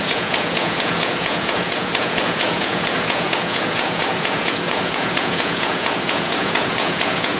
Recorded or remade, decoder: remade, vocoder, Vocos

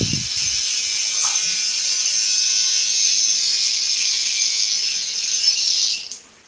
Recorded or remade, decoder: recorded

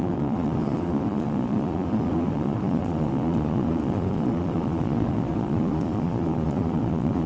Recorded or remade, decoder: remade, vocoder, Vocos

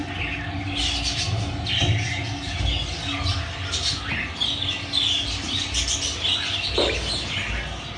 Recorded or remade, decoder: recorded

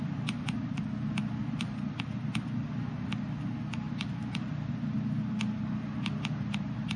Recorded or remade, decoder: recorded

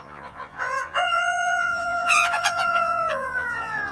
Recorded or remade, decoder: remade, vocoder, Vocos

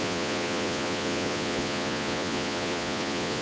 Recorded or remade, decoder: remade, vocoder, Vocos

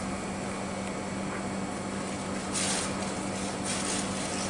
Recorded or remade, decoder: recorded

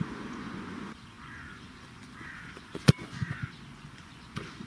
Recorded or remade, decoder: remade, vocoder, Vocos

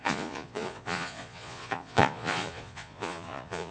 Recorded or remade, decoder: remade, vocoder, Vocos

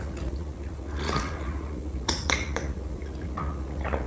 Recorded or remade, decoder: remade, vocoder, Vocos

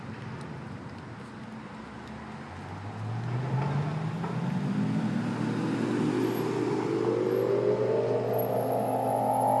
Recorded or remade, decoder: recorded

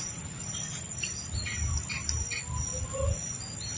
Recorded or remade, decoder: recorded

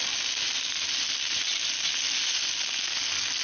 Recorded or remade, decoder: recorded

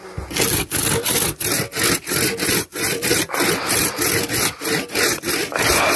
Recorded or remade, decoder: recorded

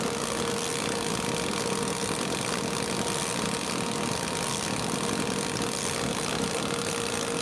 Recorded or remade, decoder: recorded